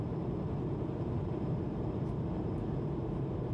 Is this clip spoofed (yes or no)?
yes